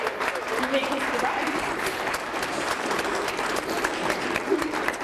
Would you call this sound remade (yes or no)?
yes